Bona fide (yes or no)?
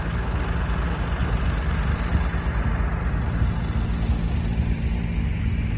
yes